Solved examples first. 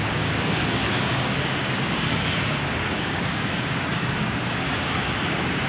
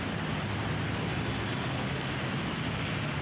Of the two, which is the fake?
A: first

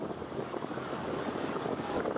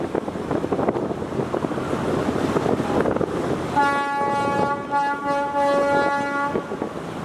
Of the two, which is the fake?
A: first